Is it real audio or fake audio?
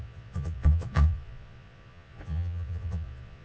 fake